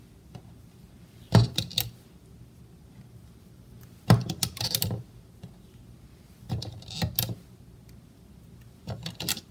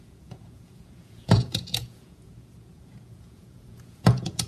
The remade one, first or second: second